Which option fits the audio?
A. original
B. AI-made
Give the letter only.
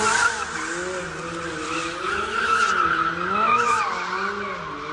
A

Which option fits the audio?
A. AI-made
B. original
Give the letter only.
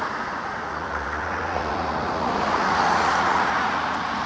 A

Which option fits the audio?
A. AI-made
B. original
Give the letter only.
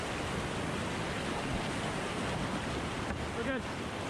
B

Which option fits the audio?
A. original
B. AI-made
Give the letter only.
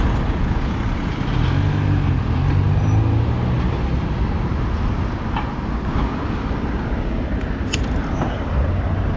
A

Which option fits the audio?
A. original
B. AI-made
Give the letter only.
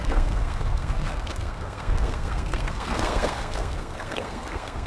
B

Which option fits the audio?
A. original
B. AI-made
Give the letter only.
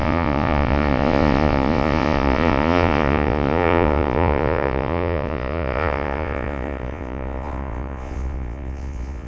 B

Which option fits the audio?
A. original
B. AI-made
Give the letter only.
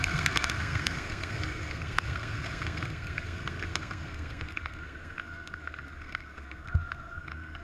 B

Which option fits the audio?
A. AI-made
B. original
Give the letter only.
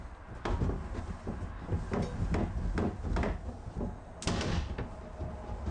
B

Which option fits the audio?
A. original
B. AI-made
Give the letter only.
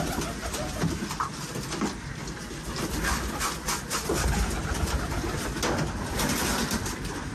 A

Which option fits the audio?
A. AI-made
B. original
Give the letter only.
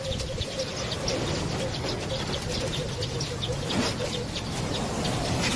B